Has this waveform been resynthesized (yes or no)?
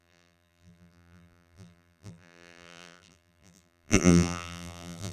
yes